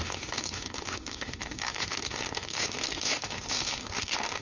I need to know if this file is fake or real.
fake